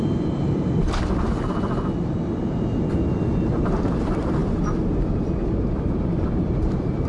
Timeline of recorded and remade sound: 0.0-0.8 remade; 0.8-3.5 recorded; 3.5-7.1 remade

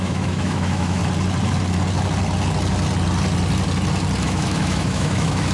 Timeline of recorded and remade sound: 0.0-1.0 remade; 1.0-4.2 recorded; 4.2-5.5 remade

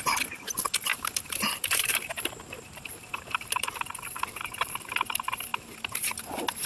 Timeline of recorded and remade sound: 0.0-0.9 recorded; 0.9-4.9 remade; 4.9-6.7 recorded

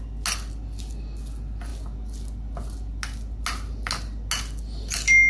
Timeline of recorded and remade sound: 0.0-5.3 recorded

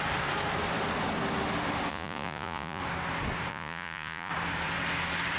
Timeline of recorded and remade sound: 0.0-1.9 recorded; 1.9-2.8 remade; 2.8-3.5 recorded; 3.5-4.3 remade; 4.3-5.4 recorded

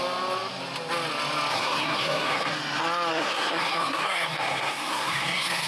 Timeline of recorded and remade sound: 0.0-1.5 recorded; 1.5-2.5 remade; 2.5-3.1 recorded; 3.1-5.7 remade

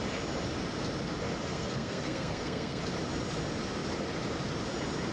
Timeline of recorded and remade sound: 0.0-1.5 recorded; 1.5-2.8 remade; 2.8-5.1 recorded